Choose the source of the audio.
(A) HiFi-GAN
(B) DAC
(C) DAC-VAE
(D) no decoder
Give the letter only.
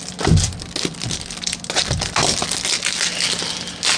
D